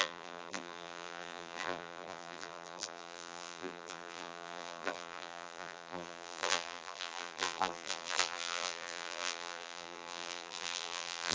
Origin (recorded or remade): remade